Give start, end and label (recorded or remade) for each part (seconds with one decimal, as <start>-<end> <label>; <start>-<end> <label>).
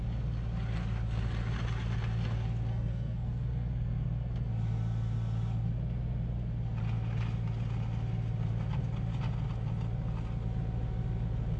0.0-2.7 recorded; 2.7-4.5 remade; 4.5-11.6 recorded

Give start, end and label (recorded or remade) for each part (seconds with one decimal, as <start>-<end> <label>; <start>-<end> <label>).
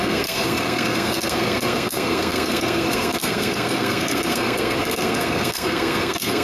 0.0-6.4 remade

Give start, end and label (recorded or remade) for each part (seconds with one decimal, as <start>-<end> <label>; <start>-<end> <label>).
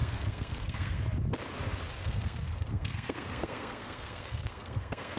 0.0-1.0 remade; 1.0-2.0 recorded; 2.0-5.2 remade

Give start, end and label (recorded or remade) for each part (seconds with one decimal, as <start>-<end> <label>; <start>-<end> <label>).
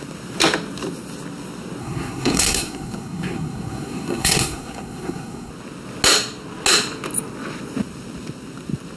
0.0-1.8 recorded; 1.8-5.5 remade; 5.5-9.0 recorded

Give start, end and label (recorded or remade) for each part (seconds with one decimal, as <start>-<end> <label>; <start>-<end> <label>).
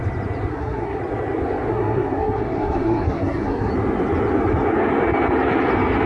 0.0-0.5 recorded; 0.5-1.0 remade; 1.0-1.7 recorded; 1.7-3.7 remade; 3.7-6.1 recorded